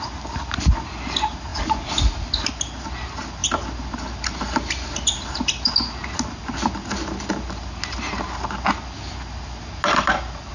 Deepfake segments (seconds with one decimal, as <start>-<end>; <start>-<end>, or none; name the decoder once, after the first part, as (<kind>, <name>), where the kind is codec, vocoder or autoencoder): none